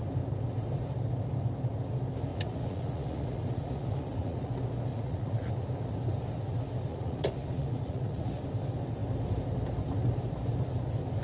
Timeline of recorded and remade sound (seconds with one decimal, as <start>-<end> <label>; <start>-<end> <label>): 0.0-2.3 recorded; 2.3-4.5 remade; 4.5-4.9 recorded; 4.9-5.5 remade; 5.5-6.9 recorded; 6.9-8.4 remade; 8.4-11.2 recorded